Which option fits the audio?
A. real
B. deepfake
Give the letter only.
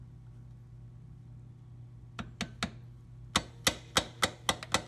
A